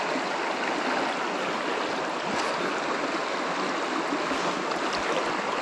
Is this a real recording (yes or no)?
yes